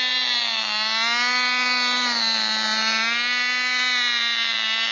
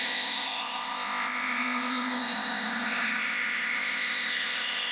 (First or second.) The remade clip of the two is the second